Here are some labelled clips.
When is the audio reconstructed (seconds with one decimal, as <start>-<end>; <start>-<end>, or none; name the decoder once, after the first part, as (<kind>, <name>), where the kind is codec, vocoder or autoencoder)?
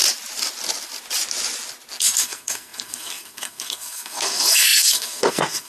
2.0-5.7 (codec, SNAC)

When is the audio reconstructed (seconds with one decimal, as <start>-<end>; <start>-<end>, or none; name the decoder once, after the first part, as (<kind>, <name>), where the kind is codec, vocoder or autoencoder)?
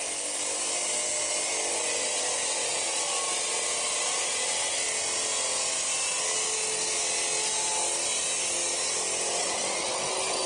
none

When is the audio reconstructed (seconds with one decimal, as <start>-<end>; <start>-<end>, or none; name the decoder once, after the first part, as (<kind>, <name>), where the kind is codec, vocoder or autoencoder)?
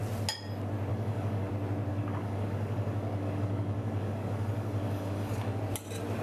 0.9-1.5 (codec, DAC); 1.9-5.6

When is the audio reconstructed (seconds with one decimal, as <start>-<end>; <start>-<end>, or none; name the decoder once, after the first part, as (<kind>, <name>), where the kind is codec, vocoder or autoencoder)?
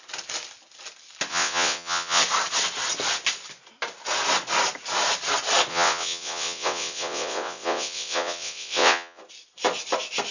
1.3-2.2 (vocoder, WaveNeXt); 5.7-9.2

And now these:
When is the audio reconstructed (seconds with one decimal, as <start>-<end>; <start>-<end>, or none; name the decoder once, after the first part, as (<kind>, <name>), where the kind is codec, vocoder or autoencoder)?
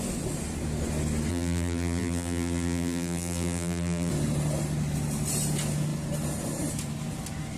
1.3-4.1 (vocoder, BigVGAN v2)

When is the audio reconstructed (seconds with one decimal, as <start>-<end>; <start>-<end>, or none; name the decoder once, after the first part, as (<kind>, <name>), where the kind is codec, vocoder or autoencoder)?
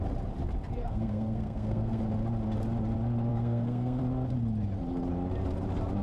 0.8-2.0 (codec, SNAC); 3.3-4.0